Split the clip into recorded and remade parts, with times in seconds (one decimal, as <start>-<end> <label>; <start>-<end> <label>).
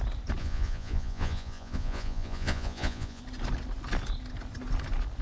0.0-0.4 recorded; 0.4-3.2 remade; 3.2-5.2 recorded